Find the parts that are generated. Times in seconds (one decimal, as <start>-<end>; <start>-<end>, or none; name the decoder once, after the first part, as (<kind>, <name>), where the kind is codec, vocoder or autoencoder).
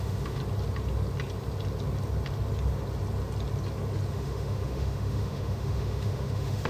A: 0.0-0.4 (autoencoder, DAC-VAE); 4.1-6.7